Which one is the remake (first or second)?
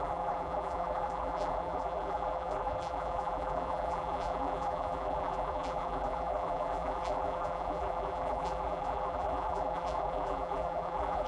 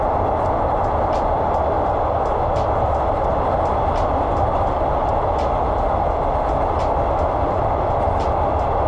first